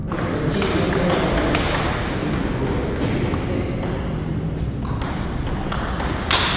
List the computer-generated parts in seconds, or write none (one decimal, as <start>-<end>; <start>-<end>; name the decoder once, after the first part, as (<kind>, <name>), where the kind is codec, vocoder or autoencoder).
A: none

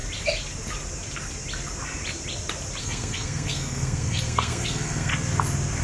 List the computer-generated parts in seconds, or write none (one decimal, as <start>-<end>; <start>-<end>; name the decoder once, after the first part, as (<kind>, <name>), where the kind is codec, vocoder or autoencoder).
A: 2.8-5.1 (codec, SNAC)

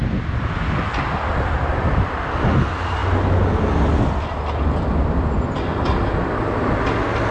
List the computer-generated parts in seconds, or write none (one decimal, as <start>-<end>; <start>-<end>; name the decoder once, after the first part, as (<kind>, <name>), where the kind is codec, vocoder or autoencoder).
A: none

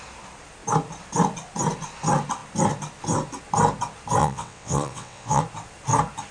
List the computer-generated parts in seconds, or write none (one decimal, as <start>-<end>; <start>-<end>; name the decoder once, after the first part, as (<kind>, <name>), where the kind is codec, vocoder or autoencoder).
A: 4.2-5.4 (vocoder, WaveNeXt)

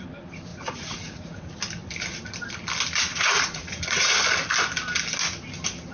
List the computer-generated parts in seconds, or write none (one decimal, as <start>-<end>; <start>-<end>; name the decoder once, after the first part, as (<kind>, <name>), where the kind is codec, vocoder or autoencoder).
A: 0.5-1.5 (vocoder, Vocos); 3.1-4.2

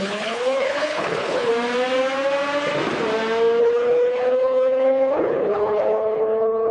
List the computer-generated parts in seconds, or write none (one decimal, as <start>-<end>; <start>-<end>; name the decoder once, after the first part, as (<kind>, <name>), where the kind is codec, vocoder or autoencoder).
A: 0.0-1.5 (codec, HILCodec); 3.6-6.7